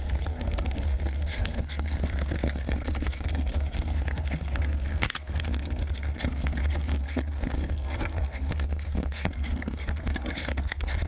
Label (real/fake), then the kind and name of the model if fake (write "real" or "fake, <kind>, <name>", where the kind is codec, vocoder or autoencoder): fake, codec, SNAC